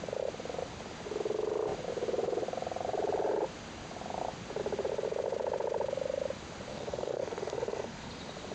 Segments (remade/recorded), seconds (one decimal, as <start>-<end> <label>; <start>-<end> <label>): 0.0-6.7 recorded; 6.7-8.1 remade; 8.1-8.5 recorded